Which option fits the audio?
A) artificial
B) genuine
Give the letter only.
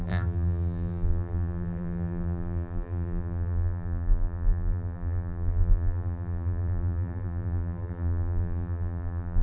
A